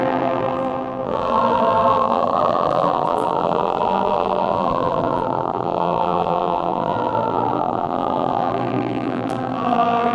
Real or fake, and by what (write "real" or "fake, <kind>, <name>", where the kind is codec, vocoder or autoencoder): fake, vocoder, BigVGAN v2